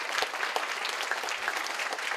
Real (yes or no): yes